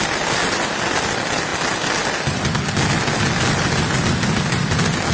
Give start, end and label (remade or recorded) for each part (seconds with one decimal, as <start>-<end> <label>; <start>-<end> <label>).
0.0-5.1 recorded